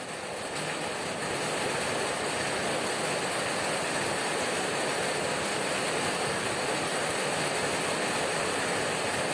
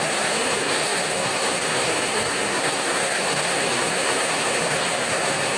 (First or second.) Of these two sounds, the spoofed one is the second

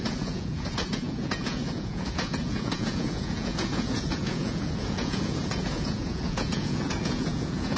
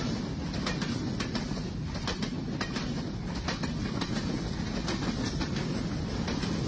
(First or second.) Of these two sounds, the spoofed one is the first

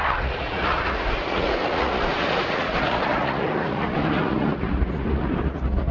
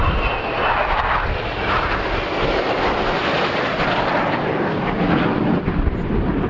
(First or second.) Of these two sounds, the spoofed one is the first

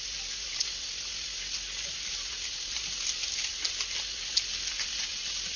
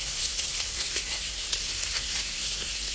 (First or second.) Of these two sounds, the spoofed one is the second